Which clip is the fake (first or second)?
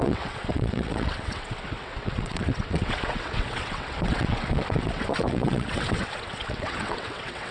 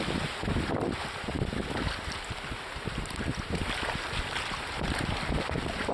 first